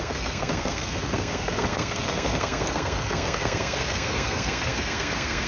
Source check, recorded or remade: remade